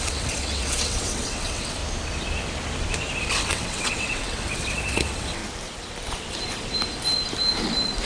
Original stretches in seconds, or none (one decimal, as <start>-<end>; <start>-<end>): 1.8-3.2; 5.4-8.1

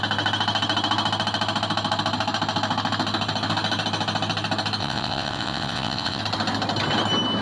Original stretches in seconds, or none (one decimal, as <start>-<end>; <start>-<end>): 0.0-4.8; 6.2-7.4

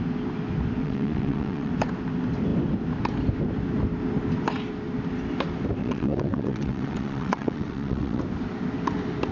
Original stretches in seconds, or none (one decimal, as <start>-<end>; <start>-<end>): 0.0-0.8; 1.7-5.8; 8.2-9.3

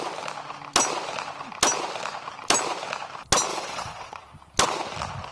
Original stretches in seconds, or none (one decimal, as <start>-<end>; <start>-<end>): 0.0-3.5; 4.2-5.3

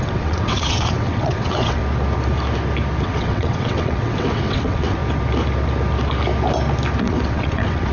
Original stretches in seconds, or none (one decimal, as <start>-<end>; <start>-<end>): 1.8-3.0; 5.0-7.0

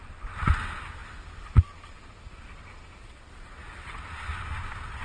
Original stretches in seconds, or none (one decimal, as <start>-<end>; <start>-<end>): 0.0-3.0; 4.0-5.0

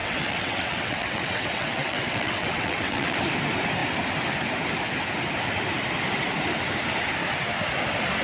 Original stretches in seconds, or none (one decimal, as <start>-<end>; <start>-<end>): 3.2-8.2